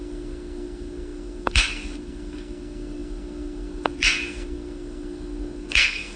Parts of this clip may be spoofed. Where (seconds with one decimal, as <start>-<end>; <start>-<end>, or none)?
0.0-6.2